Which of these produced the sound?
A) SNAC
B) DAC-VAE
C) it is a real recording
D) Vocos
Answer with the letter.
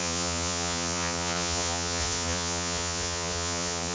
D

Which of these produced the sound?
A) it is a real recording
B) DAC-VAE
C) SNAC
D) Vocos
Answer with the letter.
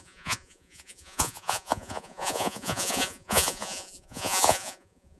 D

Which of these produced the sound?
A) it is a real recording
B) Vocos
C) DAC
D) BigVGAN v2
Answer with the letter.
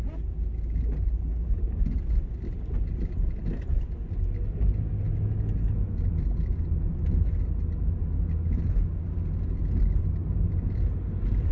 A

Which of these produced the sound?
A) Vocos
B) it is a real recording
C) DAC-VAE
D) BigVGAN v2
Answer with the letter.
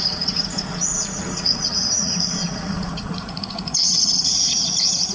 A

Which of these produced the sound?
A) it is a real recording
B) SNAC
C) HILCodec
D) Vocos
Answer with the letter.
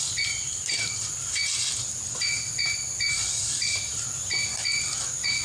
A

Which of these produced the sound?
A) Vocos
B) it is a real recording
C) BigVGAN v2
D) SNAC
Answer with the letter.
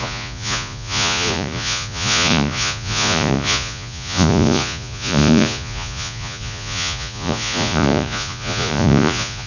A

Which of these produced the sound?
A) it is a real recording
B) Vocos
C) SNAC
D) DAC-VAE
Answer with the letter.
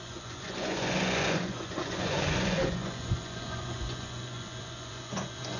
B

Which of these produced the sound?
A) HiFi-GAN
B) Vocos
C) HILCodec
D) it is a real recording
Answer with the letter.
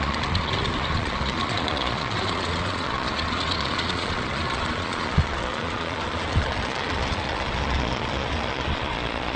B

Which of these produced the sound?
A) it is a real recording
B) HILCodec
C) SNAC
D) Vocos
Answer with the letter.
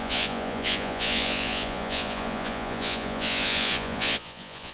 D